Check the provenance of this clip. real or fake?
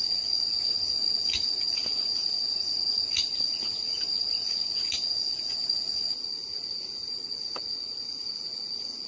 fake